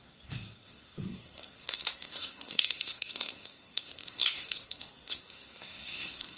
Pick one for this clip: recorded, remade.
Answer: remade